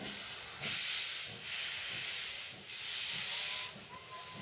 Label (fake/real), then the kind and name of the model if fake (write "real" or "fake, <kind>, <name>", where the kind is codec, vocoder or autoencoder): real